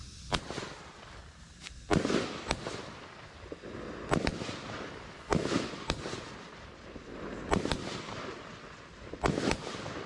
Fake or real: real